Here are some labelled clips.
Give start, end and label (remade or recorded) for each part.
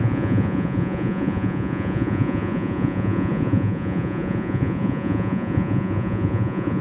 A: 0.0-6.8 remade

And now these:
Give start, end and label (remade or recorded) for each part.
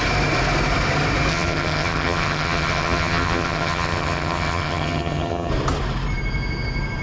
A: 0.0-1.3 recorded; 1.3-5.5 remade; 5.5-7.0 recorded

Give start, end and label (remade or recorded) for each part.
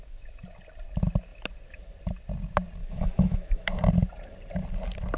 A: 0.0-2.8 recorded; 2.8-3.7 remade; 3.7-5.2 recorded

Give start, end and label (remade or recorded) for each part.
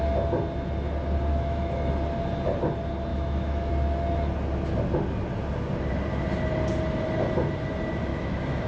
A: 0.0-1.3 recorded; 1.3-1.9 remade; 1.9-3.1 recorded; 3.1-3.7 remade; 3.7-8.1 recorded; 8.1-8.7 remade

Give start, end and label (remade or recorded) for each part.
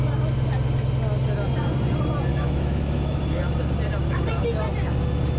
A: 0.0-2.3 recorded; 2.3-3.4 remade; 3.4-5.4 recorded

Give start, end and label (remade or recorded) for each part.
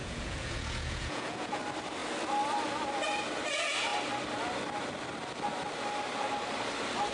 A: 0.0-1.6 remade; 1.6-7.1 recorded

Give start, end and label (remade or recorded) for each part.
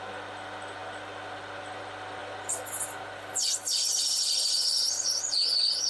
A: 0.0-5.9 recorded